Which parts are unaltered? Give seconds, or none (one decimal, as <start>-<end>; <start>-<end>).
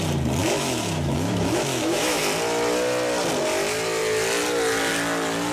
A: 0.0-0.4; 2.2-5.5